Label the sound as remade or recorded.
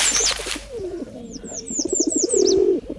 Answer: remade